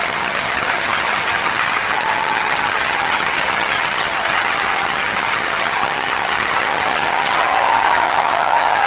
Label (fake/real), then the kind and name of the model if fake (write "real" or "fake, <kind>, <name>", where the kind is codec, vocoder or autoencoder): fake, vocoder, HiFi-GAN